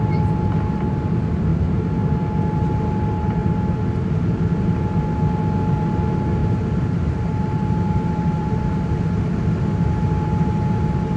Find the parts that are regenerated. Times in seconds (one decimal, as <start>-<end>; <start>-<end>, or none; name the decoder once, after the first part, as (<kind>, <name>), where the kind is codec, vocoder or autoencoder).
1.5-2.1 (vocoder, BigVGAN v2); 6.4-8.9